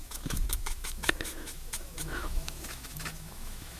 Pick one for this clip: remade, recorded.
remade